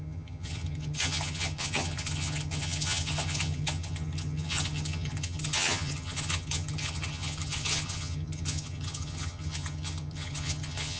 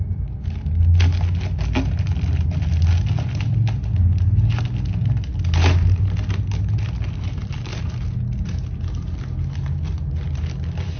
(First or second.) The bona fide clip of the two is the second